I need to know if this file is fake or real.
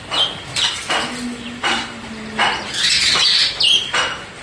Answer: real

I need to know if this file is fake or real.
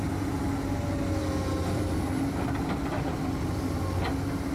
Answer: real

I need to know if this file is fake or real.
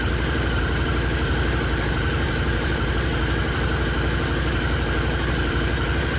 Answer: fake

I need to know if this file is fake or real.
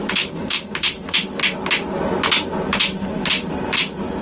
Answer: real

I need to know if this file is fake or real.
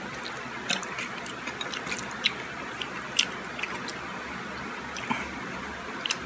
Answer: real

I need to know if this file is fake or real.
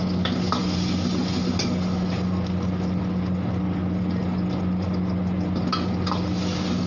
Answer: real